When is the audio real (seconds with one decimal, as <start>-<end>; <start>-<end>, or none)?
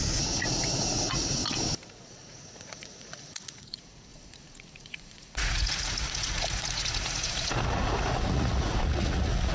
1.4-2.1